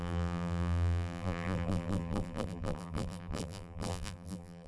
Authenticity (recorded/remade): remade